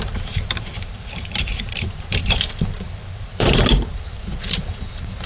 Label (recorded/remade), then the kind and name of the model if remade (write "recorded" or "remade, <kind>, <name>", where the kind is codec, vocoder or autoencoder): remade, vocoder, BigVGAN v2